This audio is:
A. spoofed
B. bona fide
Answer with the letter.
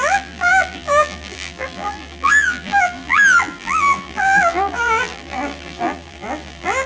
A